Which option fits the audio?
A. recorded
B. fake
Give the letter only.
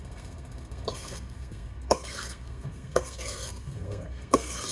B